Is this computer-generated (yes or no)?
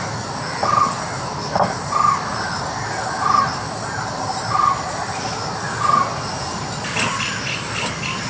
no